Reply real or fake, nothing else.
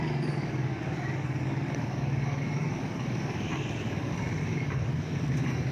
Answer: fake